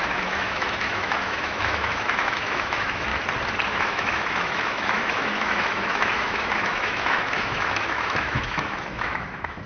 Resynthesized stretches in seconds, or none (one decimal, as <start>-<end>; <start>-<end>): 0.0-3.1; 3.7-9.7